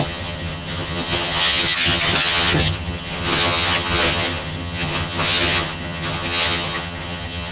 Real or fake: fake